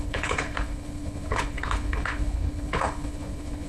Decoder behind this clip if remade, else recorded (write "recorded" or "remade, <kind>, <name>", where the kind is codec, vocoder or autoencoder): remade, codec, HILCodec